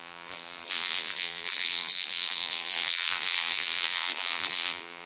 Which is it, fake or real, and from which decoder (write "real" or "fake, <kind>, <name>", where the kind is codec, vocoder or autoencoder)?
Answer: fake, vocoder, BigVGAN v2